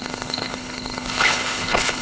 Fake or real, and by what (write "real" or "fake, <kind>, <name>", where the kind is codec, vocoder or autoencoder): fake, codec, HILCodec